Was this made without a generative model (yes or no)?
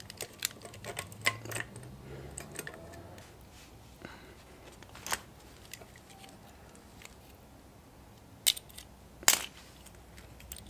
yes